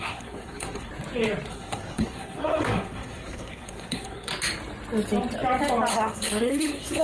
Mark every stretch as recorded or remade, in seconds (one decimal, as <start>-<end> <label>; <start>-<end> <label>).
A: 0.0-0.9 remade; 0.9-1.5 recorded; 1.5-4.3 remade; 4.3-5.9 recorded; 5.9-7.0 remade

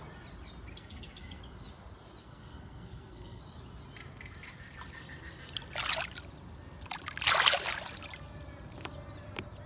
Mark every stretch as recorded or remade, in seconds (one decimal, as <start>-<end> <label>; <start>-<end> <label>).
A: 0.0-0.7 recorded; 0.7-1.4 remade; 1.4-2.2 recorded; 2.2-3.4 remade; 3.4-9.7 recorded

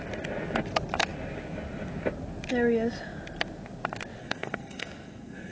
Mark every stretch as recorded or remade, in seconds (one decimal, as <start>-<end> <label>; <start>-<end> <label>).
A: 0.0-4.2 recorded; 4.2-5.5 remade

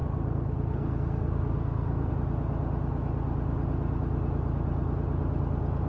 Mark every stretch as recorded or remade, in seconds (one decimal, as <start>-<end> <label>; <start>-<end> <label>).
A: 0.0-2.1 remade; 2.1-5.9 recorded

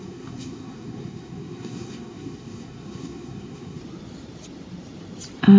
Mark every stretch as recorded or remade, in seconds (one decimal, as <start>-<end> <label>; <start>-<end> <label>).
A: 0.0-3.8 remade; 3.8-5.6 recorded